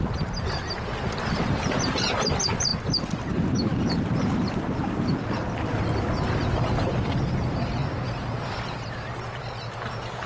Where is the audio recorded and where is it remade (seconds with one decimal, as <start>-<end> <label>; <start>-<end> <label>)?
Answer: 0.0-2.7 remade; 2.7-3.3 recorded; 3.3-3.7 remade; 3.7-6.4 recorded; 6.4-10.3 remade